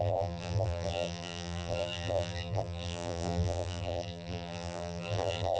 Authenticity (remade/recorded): remade